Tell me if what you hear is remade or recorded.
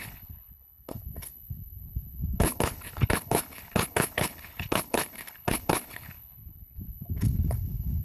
remade